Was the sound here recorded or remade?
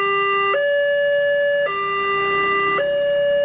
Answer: recorded